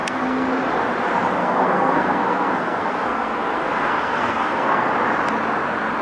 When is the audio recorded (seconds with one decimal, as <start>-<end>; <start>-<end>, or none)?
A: 0.5-1.4; 4.9-6.0